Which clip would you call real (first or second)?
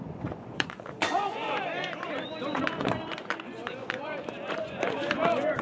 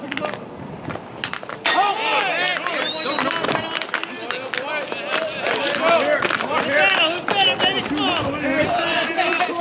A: second